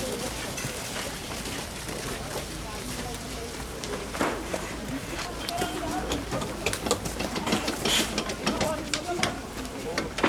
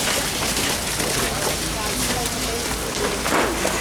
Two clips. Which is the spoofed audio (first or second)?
first